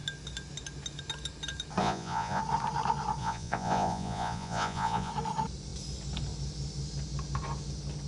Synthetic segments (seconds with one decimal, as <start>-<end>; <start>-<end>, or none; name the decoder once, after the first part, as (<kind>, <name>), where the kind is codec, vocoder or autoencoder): 1.8-2.4 (vocoder, Vocos); 3.2-5.1